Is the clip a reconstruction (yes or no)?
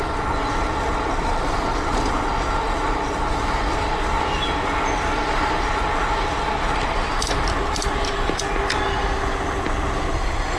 no